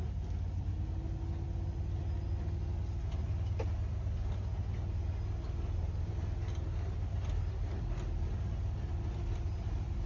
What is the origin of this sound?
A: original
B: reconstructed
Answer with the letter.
A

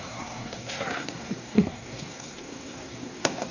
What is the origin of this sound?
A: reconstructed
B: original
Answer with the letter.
A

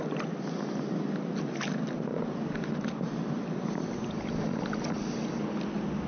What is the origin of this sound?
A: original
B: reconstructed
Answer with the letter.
A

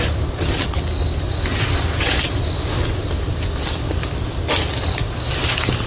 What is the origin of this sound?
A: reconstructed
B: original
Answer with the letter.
B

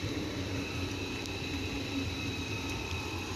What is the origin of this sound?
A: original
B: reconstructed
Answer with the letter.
A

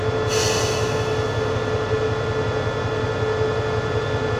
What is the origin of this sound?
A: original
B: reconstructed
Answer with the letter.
A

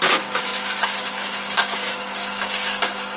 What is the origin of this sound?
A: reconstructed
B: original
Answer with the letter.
A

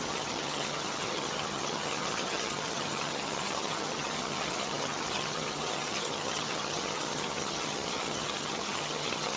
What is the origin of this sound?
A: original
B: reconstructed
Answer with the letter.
B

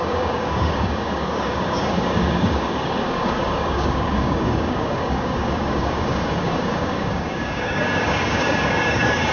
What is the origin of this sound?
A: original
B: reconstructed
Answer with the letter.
B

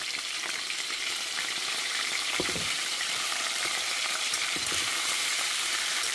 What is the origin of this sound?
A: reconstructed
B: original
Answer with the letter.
A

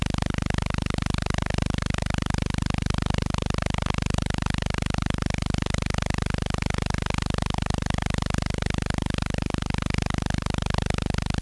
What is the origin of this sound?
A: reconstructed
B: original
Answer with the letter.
B